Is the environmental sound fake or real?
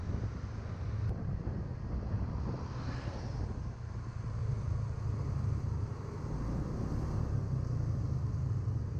real